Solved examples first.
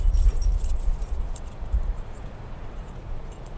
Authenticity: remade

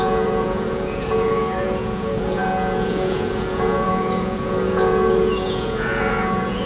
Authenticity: remade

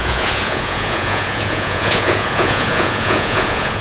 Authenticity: remade